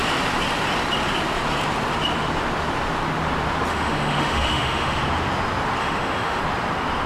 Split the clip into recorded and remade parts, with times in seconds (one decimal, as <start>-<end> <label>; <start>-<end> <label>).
0.0-3.7 recorded; 3.7-5.0 remade; 5.0-5.8 recorded; 5.8-6.4 remade; 6.4-7.1 recorded